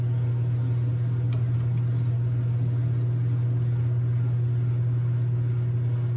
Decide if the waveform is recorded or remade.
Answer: recorded